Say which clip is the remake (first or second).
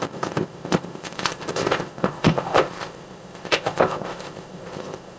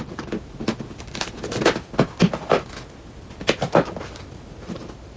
first